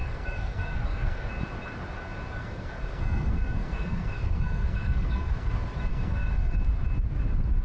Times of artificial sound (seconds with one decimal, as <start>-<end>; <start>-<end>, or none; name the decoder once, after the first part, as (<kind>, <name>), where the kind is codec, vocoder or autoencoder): 0.0-1.3 (codec, SNAC); 2.3-5.5; 5.9-6.6